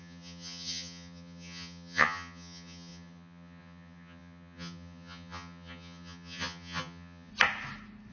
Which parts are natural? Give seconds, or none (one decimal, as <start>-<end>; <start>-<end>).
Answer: 7.3-8.1